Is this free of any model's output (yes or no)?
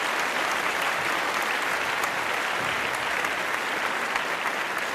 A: yes